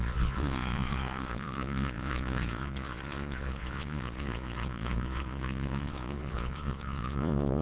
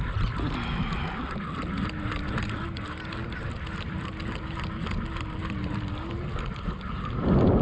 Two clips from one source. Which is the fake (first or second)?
first